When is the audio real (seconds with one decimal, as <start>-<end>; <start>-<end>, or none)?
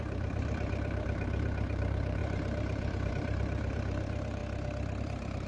4.4-5.0